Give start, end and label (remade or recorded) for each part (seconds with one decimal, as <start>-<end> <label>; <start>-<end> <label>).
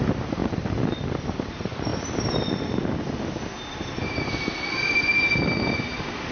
0.0-0.4 remade; 0.4-1.5 recorded; 1.5-1.9 remade; 1.9-5.7 recorded; 5.7-6.3 remade